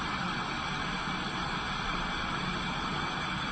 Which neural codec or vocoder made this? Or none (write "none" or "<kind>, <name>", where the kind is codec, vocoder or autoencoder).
none